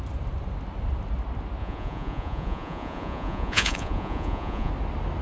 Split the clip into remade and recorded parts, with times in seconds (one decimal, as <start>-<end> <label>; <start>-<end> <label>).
0.0-1.6 recorded; 1.6-4.7 remade; 4.7-5.2 recorded